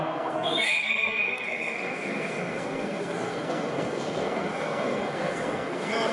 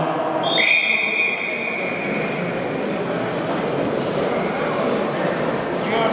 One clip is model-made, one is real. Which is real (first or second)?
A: second